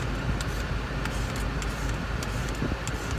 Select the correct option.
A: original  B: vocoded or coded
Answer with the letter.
A